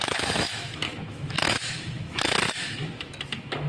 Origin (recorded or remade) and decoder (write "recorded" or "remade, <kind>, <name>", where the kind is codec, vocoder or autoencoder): remade, autoencoder, DAC-VAE